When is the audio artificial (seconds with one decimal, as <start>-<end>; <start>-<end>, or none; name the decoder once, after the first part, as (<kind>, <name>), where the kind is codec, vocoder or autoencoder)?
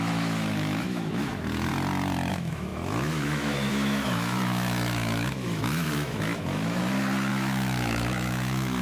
0.0-1.7 (autoencoder, DAC-VAE); 2.3-6.8; 7.3-8.8